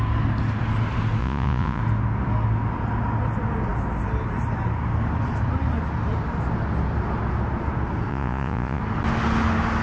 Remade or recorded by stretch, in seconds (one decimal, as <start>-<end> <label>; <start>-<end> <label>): 0.0-1.2 recorded; 1.2-1.8 remade; 1.8-8.1 recorded; 8.1-8.8 remade; 8.8-9.8 recorded